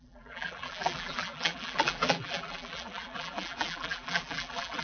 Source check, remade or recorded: remade